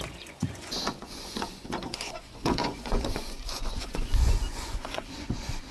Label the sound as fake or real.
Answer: fake